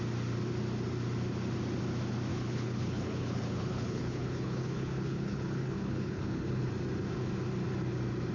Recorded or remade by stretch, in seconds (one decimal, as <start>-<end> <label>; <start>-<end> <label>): 0.0-2.3 recorded; 2.3-6.7 remade; 6.7-8.3 recorded